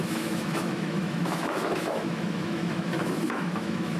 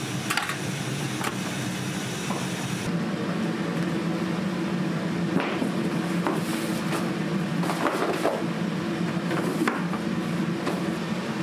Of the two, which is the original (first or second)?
second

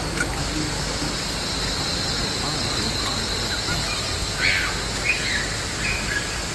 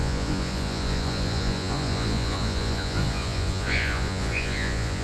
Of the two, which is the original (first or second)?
first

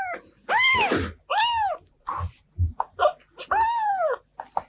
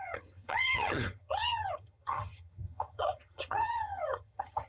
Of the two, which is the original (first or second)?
first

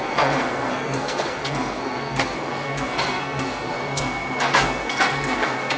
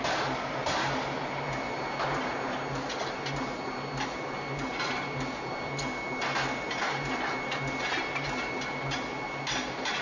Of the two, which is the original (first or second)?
second